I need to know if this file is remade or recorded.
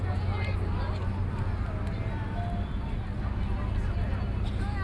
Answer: recorded